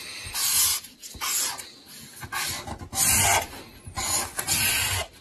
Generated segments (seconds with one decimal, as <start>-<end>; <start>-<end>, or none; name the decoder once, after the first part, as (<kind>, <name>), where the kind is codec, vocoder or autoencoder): none